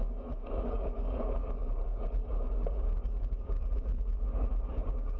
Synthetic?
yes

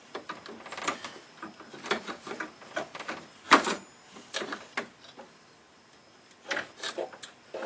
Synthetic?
no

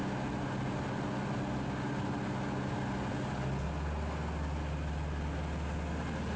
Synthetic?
no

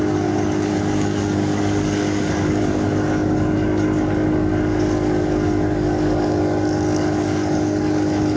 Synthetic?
yes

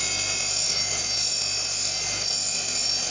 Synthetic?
no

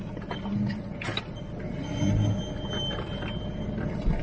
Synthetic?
no